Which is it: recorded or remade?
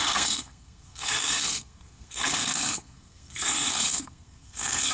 remade